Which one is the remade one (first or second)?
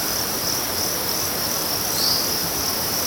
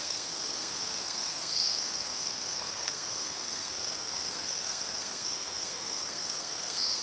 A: second